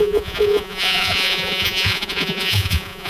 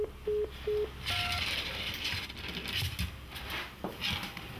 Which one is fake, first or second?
first